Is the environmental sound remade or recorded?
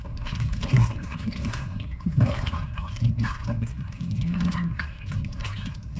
remade